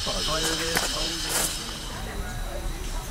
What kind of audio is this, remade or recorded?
remade